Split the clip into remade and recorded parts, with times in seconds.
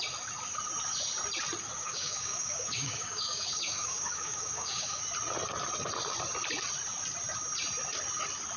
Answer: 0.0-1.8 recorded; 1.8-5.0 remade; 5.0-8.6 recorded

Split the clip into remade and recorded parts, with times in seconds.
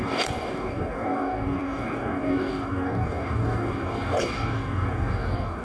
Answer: 0.0-5.6 remade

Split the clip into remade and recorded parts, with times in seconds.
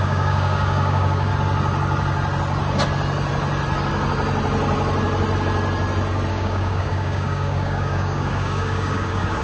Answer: 0.0-1.3 remade; 1.3-6.3 recorded; 6.3-9.4 remade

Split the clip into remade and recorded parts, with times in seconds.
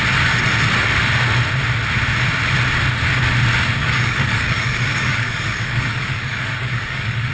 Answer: 0.0-3.8 recorded; 3.8-7.3 remade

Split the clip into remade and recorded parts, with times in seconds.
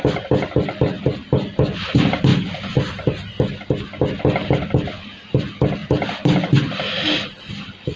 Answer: 0.0-8.0 recorded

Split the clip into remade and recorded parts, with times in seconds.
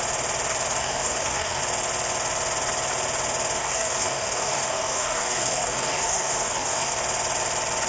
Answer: 0.0-0.8 recorded; 0.8-1.6 remade; 1.6-3.6 recorded; 3.6-7.0 remade; 7.0-7.9 recorded